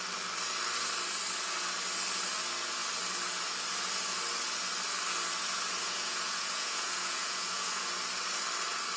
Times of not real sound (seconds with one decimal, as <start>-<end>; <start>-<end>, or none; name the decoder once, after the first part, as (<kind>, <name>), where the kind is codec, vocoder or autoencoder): 5.8-7.8 (vocoder, Vocos)